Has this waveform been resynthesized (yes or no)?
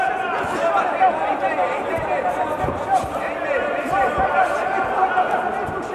no